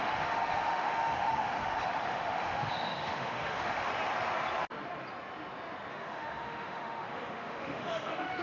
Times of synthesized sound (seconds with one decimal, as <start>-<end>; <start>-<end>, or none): 0.0-3.9; 5.9-8.4